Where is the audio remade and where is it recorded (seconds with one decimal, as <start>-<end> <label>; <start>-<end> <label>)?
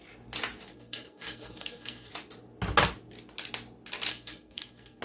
0.0-0.7 recorded; 0.7-2.1 remade; 2.1-4.1 recorded; 4.1-5.0 remade